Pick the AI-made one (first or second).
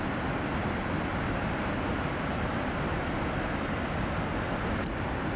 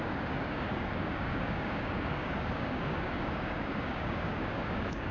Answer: second